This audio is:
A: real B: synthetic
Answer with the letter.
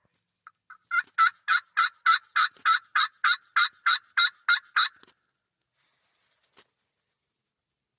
A